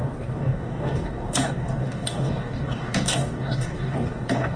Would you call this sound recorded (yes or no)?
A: no